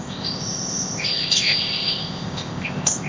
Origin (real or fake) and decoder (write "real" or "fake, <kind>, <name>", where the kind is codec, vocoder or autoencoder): fake, codec, ZipCodec